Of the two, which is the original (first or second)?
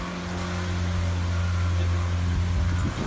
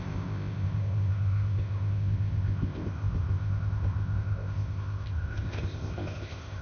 first